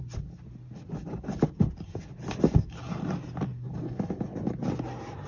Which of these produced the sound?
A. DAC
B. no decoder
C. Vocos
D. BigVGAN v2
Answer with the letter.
B